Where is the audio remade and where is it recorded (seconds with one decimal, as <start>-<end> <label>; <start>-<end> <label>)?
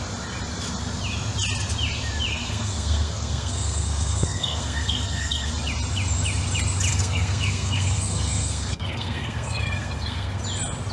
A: 0.0-2.3 recorded; 2.3-5.5 remade; 5.5-6.9 recorded; 6.9-10.4 remade; 10.4-10.9 recorded